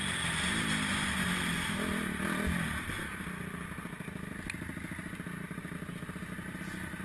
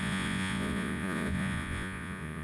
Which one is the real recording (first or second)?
first